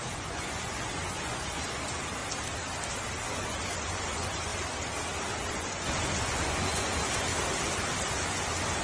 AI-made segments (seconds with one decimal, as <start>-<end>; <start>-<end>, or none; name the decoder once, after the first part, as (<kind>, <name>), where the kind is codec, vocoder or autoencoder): 0.0-2.2 (vocoder, Vocos); 3.3-4.5; 5.5-7.3; 8.0-8.8